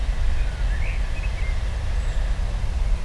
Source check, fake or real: real